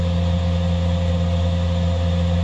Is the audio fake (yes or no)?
no